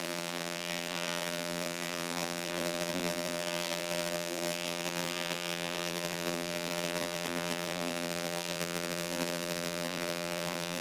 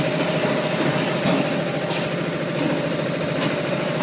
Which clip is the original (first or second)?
second